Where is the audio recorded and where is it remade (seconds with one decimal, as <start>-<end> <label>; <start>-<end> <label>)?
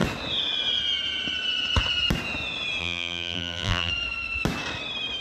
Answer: 0.0-2.8 recorded; 2.8-3.9 remade; 3.9-5.2 recorded